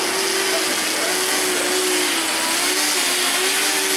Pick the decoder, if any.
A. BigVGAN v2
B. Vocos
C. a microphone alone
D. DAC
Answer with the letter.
C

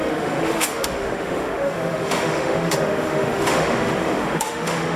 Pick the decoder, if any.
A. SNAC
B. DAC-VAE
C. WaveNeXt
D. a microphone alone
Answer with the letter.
B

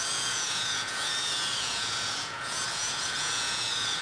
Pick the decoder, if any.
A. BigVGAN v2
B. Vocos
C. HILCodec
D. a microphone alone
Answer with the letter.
B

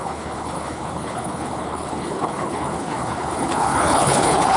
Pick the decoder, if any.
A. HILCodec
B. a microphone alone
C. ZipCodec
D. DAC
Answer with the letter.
A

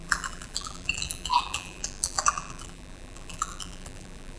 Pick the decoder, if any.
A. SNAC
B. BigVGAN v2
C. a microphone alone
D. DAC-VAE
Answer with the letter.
B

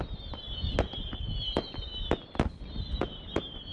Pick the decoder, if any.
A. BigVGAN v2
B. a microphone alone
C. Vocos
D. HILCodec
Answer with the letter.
A